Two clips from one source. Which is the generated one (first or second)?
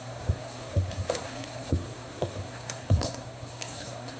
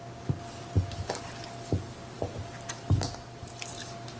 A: first